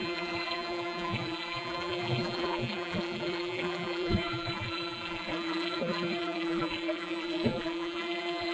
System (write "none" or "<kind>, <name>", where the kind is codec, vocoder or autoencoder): vocoder, BigVGAN v2